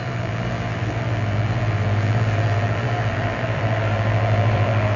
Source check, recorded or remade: remade